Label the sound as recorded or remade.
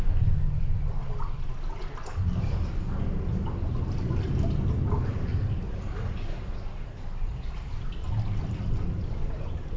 recorded